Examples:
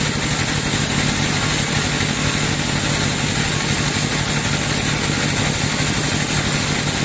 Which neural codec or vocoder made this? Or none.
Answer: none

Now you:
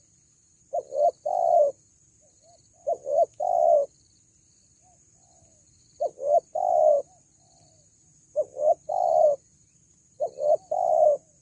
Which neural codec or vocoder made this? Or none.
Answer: none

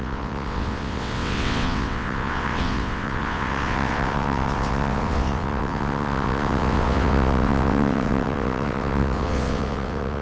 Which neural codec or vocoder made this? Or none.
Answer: vocoder, WaveNeXt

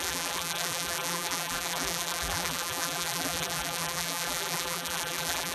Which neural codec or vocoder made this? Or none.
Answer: vocoder, BigVGAN v2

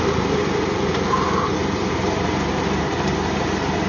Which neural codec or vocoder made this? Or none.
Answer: none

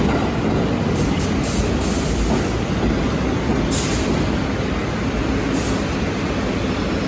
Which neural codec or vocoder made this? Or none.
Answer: none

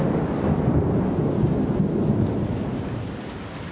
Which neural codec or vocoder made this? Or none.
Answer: none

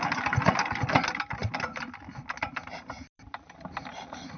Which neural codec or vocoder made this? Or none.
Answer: none